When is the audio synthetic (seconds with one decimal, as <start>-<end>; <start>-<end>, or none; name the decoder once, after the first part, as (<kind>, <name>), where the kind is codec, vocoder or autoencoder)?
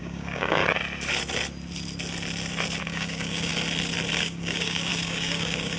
0.0-0.6 (codec, DAC); 2.8-3.5; 4.2-5.8